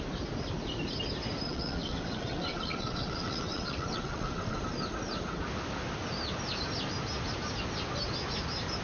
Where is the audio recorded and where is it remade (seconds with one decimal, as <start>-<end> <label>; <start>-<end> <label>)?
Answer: 0.0-1.5 recorded; 1.5-4.6 remade; 4.6-8.8 recorded